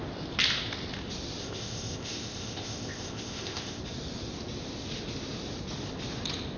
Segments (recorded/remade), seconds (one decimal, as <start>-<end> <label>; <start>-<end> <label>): 0.0-1.4 recorded; 1.4-3.8 remade; 3.8-6.6 recorded